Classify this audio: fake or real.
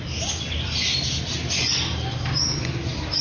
real